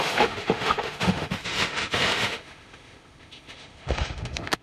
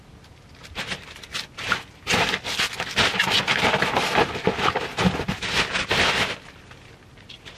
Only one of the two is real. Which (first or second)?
second